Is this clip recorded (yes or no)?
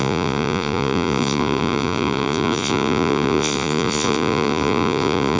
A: no